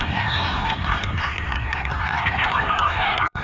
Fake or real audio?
fake